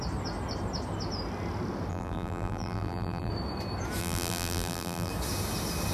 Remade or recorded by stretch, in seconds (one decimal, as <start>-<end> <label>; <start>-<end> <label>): 0.0-1.9 recorded; 1.9-3.3 remade; 3.3-4.0 recorded; 4.0-5.1 remade; 5.1-5.9 recorded